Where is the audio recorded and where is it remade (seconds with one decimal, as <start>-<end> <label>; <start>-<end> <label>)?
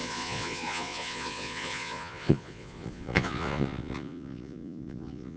0.0-5.4 remade